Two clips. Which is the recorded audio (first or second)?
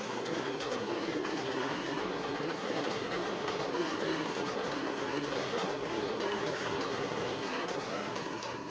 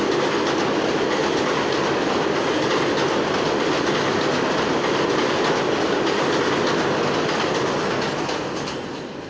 second